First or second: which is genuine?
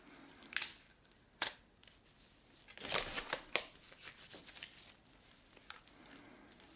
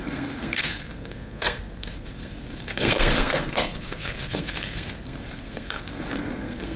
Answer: first